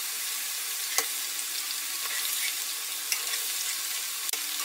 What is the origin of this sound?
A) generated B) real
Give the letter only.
B